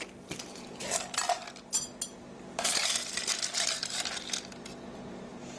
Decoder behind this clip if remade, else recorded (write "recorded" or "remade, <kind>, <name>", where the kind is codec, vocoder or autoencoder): recorded